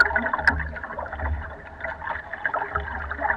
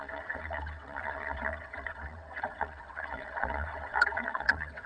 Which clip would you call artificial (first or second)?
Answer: second